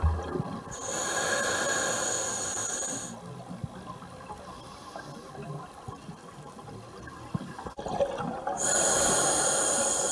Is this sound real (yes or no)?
yes